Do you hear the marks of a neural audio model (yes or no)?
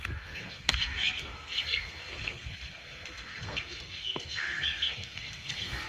yes